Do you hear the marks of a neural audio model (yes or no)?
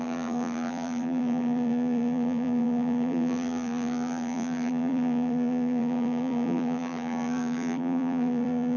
yes